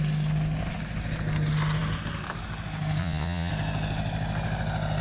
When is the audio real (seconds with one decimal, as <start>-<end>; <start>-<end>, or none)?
0.0-3.0; 3.5-5.0